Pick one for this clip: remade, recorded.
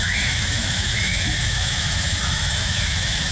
remade